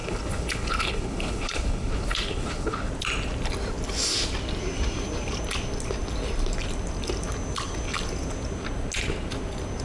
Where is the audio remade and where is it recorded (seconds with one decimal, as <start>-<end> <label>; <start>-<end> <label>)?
0.0-2.9 remade; 2.9-9.8 recorded